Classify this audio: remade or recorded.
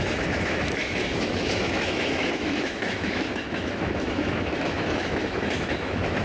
remade